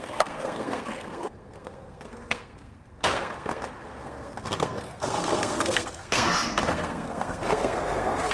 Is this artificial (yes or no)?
yes